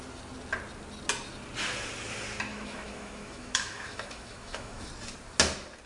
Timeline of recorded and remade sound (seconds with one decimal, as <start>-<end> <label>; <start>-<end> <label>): 0.0-2.5 recorded; 2.5-4.9 remade; 4.9-5.9 recorded